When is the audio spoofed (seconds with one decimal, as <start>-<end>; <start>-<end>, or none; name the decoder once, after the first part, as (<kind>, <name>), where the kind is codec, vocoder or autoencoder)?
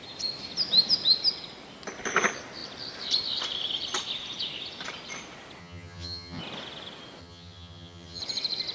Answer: 5.6-6.4 (vocoder, HiFi-GAN); 7.2-8.2